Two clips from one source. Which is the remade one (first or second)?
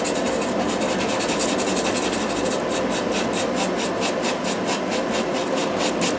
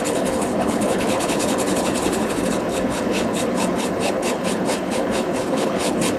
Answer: second